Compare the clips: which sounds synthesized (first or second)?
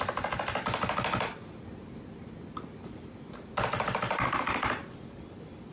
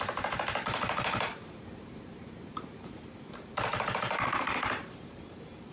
second